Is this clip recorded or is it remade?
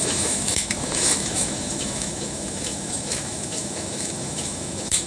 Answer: remade